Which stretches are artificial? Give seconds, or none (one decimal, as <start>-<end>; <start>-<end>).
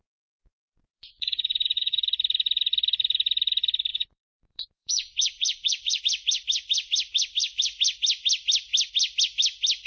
0.8-2.0; 3.9-6.0